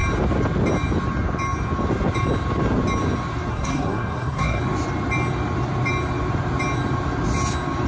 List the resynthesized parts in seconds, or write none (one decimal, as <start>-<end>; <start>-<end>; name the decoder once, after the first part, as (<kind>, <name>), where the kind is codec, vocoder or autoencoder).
3.5-4.6 (codec, SNAC)